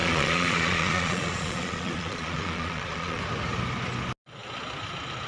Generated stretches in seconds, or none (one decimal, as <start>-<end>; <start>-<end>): 0.0-3.2